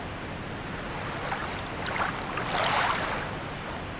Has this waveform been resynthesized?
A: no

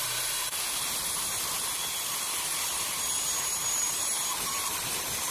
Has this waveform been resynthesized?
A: yes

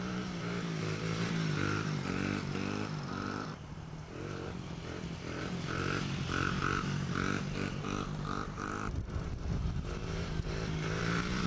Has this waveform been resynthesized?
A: yes